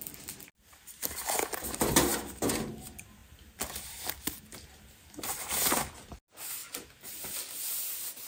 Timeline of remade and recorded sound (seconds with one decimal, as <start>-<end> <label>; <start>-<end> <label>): 0.0-2.1 recorded; 2.1-2.7 remade; 2.7-3.2 recorded; 3.2-4.8 remade; 4.8-8.3 recorded